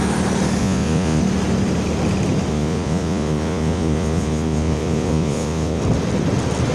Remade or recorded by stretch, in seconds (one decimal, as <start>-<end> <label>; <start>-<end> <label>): 0.0-0.6 recorded; 0.6-1.2 remade; 1.2-2.5 recorded; 2.5-5.8 remade; 5.8-6.7 recorded